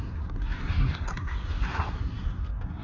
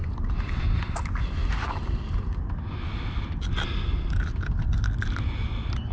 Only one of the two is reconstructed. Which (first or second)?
first